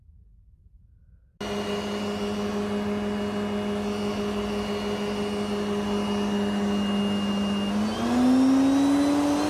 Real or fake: real